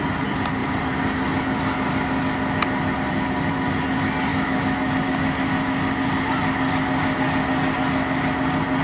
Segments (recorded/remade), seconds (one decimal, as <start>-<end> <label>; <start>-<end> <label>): 0.0-4.3 recorded; 4.3-4.9 remade; 4.9-8.8 recorded